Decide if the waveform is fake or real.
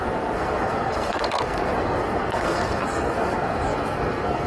fake